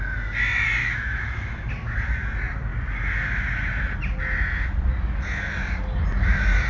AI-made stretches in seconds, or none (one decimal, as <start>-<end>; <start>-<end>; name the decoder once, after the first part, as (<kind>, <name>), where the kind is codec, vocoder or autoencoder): 0.8-1.7 (autoencoder, DAC-VAE)